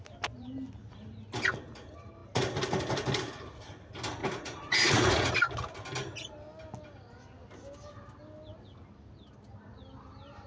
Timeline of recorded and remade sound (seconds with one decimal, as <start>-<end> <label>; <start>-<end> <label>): 0.0-4.2 recorded; 4.2-5.3 remade; 5.3-10.5 recorded